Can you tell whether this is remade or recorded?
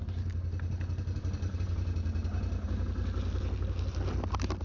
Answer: recorded